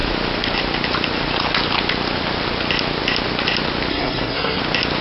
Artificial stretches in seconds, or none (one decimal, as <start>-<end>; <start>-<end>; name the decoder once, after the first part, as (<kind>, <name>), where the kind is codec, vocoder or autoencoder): 3.9-4.6 (codec, SNAC)